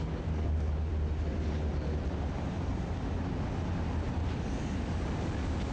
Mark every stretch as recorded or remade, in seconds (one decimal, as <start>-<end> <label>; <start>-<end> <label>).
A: 0.0-0.9 remade; 0.9-4.3 recorded; 4.3-5.7 remade